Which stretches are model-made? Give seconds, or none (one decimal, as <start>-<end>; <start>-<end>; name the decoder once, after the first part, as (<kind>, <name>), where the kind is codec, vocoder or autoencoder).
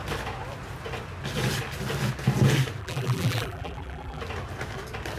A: 2.8-4.2 (vocoder, BigVGAN v2)